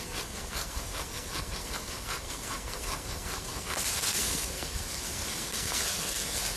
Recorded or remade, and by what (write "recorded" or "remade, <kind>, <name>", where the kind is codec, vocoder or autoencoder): remade, codec, SNAC